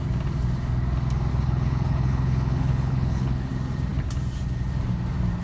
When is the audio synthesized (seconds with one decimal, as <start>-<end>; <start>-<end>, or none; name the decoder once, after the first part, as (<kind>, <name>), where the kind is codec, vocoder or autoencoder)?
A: 1.3-3.5 (codec, HILCodec)